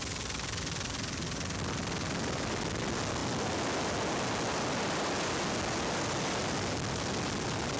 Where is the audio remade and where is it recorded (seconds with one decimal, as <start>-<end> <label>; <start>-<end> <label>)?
0.0-7.8 recorded